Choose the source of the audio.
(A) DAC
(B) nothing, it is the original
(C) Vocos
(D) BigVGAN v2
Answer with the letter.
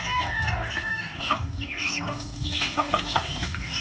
A